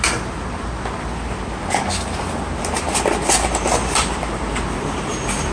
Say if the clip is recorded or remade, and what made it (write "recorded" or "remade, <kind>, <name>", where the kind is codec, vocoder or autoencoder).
recorded